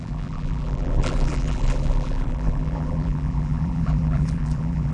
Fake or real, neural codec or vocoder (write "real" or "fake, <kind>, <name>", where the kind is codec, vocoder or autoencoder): fake, vocoder, BigVGAN v2